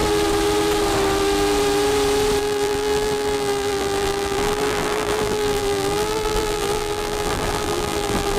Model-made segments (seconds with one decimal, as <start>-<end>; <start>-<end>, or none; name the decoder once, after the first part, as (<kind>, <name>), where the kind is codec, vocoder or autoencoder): 2.4-8.4 (vocoder, BigVGAN v2)